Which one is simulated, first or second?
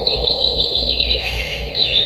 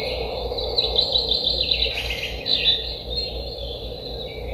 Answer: first